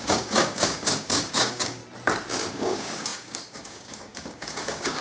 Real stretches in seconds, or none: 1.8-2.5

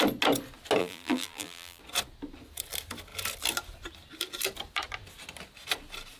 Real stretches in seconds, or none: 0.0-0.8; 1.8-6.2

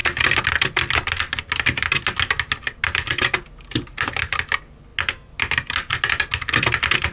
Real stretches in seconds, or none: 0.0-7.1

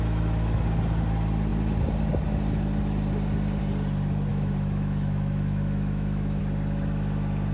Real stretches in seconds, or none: 0.0-4.3; 6.4-7.5

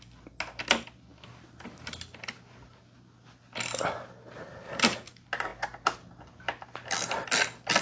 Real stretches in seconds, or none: 0.0-7.8